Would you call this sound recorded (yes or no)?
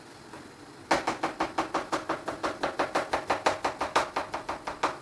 yes